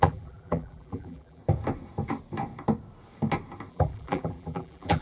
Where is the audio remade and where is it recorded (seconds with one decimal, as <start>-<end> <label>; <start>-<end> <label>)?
0.0-1.4 remade; 1.4-3.7 recorded; 3.7-5.0 remade